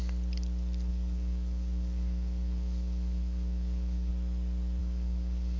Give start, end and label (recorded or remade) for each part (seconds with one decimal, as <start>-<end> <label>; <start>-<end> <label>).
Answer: 0.0-0.9 recorded; 0.9-4.1 remade; 4.1-4.8 recorded; 4.8-5.6 remade